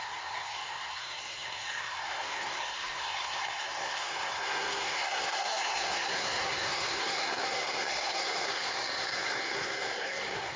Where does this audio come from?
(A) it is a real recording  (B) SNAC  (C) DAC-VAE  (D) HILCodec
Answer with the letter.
B